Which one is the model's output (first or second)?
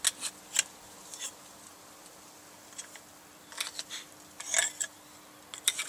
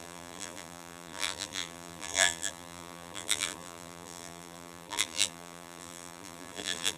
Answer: second